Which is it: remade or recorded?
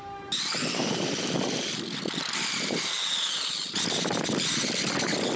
recorded